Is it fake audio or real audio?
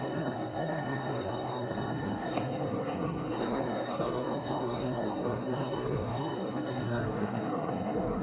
fake